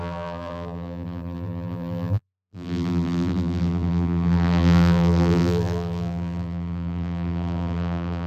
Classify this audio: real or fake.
fake